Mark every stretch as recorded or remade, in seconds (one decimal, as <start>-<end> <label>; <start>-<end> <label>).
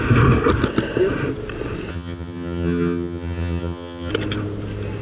0.0-1.9 recorded; 1.9-4.1 remade; 4.1-5.0 recorded